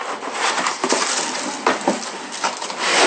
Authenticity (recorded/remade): recorded